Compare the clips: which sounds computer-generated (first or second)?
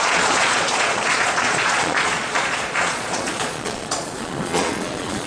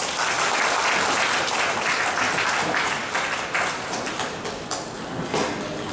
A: first